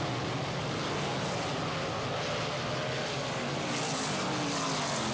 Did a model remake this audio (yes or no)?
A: no